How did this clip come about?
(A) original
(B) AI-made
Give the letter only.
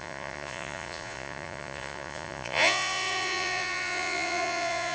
B